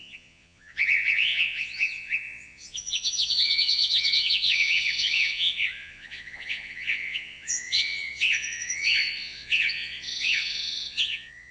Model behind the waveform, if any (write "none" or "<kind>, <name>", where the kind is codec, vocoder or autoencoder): vocoder, Vocos